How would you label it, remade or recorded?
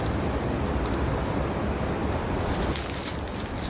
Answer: recorded